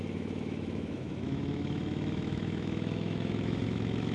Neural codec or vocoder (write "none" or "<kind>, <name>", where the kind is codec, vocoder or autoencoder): autoencoder, DAC-VAE